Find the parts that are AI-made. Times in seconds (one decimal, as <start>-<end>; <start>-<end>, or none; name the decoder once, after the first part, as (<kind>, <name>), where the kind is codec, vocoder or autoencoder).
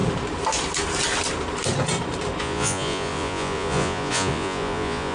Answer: 2.4-5.1 (vocoder, Vocos)